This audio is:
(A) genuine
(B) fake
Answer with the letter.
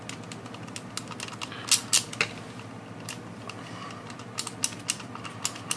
A